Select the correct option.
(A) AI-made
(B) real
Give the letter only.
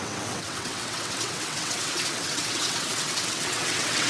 A